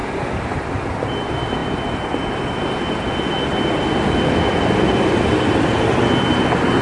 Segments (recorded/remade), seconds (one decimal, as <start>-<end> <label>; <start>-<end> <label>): 0.0-6.8 recorded